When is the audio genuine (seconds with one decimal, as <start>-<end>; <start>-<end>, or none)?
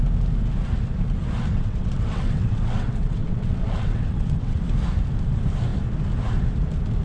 0.0-1.5; 4.6-7.0